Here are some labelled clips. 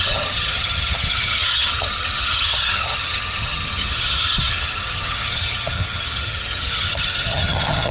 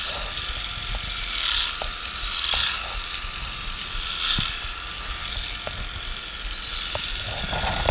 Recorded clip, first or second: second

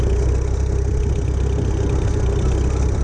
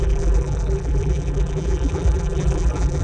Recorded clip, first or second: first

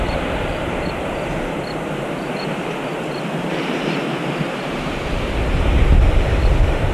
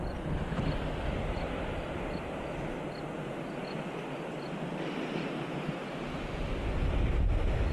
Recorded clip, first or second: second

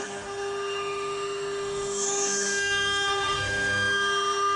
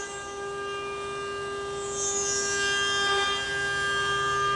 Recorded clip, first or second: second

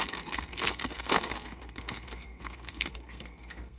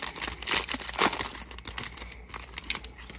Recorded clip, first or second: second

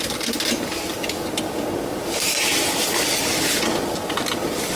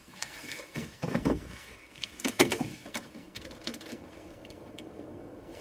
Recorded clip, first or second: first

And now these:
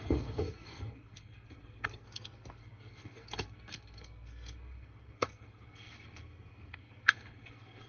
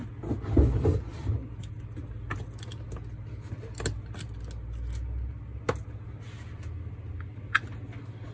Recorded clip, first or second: second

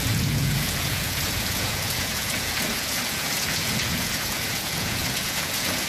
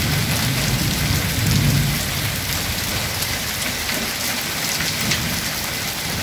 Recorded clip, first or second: second